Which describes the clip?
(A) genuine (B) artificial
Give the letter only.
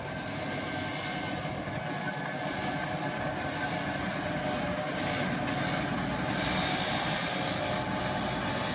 A